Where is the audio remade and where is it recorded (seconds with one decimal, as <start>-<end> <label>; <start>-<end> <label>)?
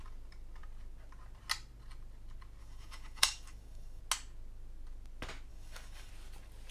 0.0-2.6 recorded; 2.6-4.0 remade; 4.0-5.5 recorded; 5.5-6.1 remade; 6.1-6.7 recorded